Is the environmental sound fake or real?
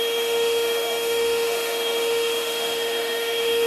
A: fake